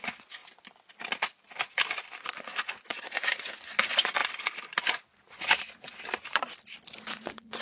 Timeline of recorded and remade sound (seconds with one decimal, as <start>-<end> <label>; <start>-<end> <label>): 0.0-0.4 remade; 0.4-2.3 recorded; 2.3-4.2 remade; 4.2-7.1 recorded; 7.1-7.6 remade